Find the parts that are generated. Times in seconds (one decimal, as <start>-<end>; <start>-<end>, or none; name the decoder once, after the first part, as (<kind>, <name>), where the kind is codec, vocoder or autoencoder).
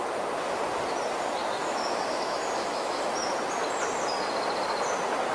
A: 1.6-3.0 (autoencoder, DAC-VAE)